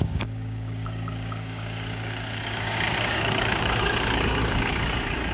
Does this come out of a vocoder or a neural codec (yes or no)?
yes